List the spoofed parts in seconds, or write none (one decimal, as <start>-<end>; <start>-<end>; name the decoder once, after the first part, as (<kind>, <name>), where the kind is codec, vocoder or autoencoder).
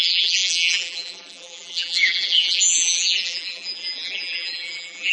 0.0-5.1 (vocoder, BigVGAN v2)